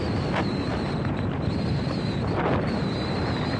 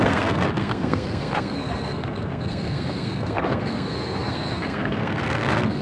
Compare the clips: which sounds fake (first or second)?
second